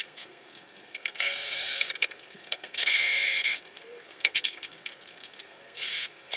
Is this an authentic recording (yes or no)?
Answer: no